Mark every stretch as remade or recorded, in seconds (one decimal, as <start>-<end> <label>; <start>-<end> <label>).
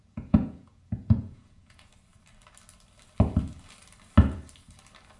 0.0-1.9 remade; 1.9-5.2 recorded